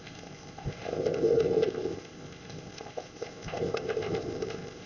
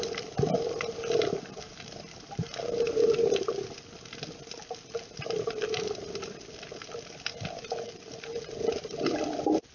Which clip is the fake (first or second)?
first